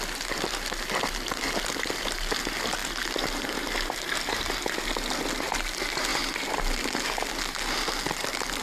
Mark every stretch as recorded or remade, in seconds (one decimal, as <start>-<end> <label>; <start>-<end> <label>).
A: 0.0-8.6 recorded